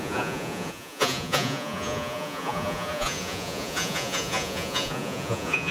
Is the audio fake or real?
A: fake